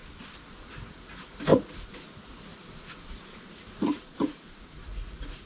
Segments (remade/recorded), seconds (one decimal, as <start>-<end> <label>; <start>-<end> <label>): 0.0-0.7 recorded; 0.7-5.5 remade